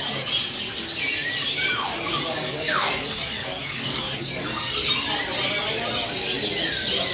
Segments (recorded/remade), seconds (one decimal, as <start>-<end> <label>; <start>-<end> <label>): 0.0-1.7 recorded; 1.7-4.3 remade; 4.3-7.1 recorded